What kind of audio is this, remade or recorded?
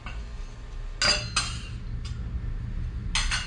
recorded